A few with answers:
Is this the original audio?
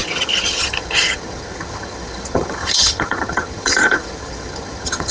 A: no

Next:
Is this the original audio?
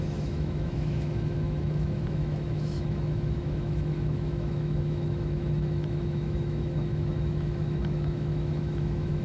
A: no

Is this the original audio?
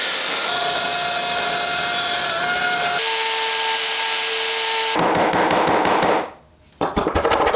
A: yes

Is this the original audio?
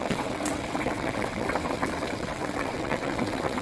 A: no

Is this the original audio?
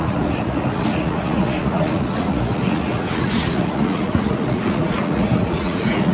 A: no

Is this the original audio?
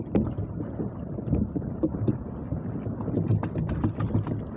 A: yes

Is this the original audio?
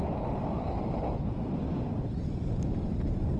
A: yes